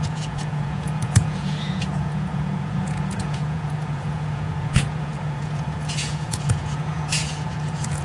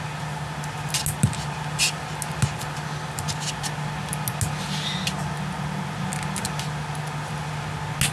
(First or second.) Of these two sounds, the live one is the second